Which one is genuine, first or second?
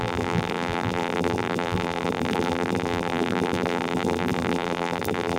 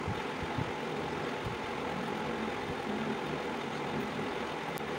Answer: second